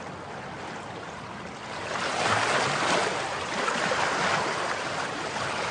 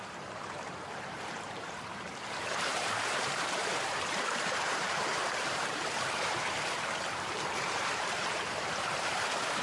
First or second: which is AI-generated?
second